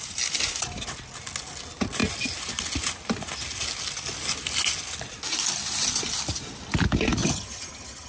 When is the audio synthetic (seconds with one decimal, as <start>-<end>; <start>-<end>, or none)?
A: 7.2-8.1